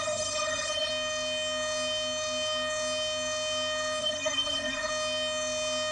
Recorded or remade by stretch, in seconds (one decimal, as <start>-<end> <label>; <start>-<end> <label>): 0.0-0.9 remade; 0.9-4.0 recorded; 4.0-4.9 remade; 4.9-5.9 recorded